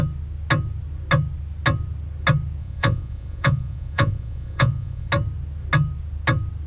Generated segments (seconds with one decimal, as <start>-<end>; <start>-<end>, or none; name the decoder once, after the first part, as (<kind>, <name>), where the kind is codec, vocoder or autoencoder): 2.6-5.1 (vocoder, Vocos)